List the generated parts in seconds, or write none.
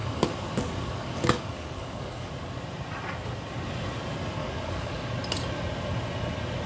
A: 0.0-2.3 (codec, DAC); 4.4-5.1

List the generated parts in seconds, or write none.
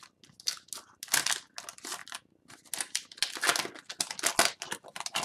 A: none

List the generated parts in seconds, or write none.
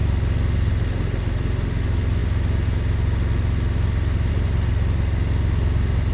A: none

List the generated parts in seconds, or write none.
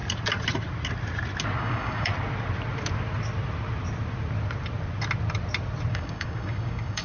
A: 1.6-2.1 (codec, DAC); 5.9-7.0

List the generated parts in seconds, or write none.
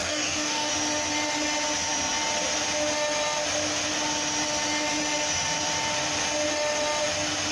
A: 0.0-0.7 (codec, DAC)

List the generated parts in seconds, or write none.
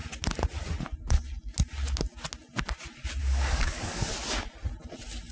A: 3.2-4.1 (codec, DAC)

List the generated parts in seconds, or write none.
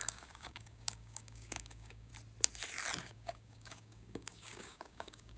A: 0.0-2.1 (codec, DAC); 3.0-5.4